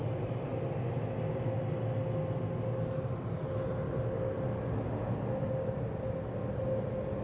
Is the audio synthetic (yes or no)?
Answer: no